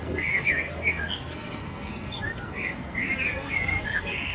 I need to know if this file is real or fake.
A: fake